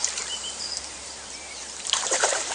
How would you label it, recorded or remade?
remade